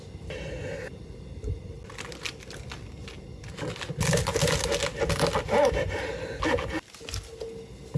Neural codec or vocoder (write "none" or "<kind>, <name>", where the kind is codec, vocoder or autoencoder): none